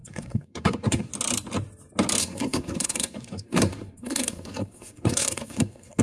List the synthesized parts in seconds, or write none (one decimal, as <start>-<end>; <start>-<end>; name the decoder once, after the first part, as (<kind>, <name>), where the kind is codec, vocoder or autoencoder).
0.0-1.1 (codec, SNAC); 2.2-6.0